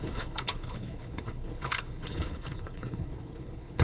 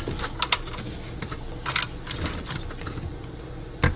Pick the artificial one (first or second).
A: first